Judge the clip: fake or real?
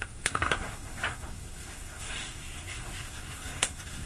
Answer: fake